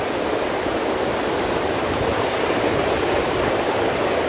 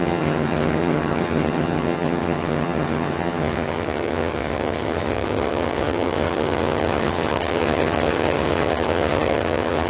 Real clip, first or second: first